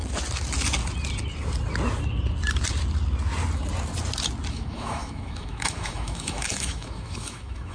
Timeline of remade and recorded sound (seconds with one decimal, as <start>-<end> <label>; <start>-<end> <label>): 0.0-4.5 recorded; 4.5-7.7 remade